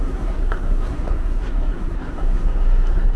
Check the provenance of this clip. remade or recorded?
remade